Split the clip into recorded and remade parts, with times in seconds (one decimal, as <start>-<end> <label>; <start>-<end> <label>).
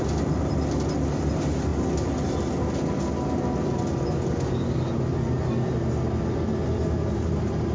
0.0-7.7 recorded